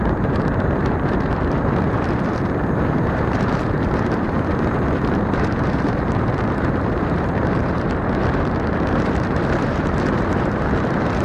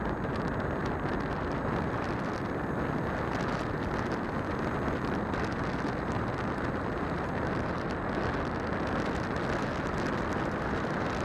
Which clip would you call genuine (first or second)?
second